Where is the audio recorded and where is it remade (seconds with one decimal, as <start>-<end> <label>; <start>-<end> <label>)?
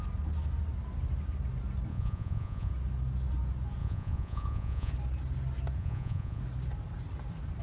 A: 0.0-1.9 recorded; 1.9-2.7 remade; 2.7-3.8 recorded; 3.8-4.9 remade; 4.9-5.8 recorded; 5.8-6.4 remade; 6.4-7.6 recorded